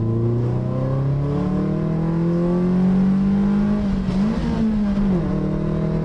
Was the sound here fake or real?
real